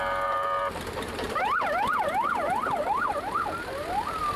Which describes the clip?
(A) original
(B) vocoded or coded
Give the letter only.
B